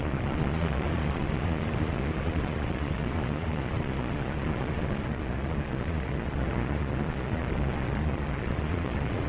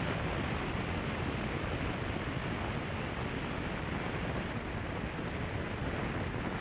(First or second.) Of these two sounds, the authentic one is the second